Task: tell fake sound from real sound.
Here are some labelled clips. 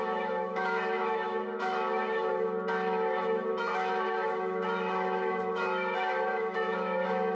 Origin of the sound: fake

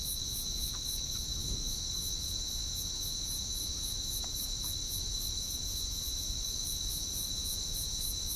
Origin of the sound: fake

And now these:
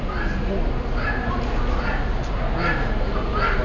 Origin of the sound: real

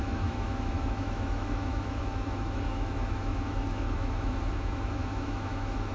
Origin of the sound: fake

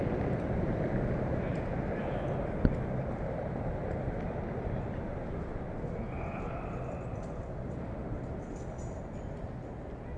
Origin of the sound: real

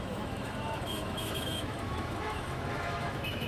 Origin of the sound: fake